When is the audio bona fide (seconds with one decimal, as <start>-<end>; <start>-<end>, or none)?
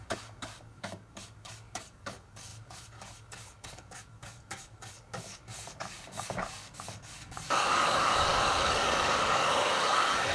none